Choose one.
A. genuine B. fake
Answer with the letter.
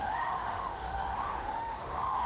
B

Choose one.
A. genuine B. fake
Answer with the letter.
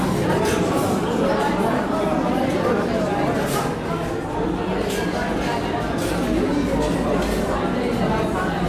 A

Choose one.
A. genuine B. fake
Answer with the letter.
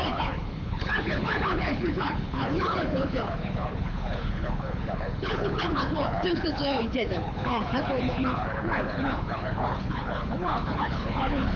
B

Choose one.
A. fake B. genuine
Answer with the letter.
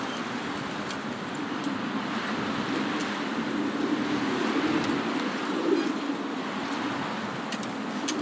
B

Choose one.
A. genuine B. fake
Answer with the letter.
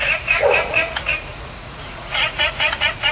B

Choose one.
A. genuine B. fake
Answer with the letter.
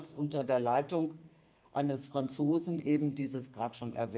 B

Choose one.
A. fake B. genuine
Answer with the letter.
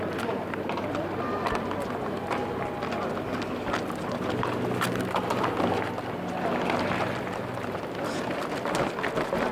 B